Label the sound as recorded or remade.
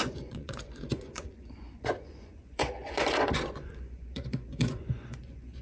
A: remade